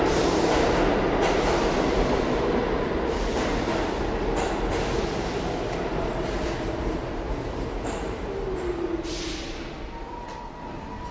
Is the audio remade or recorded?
recorded